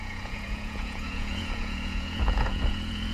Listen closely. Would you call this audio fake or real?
fake